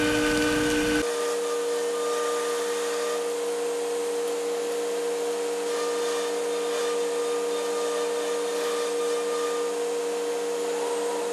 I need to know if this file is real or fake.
real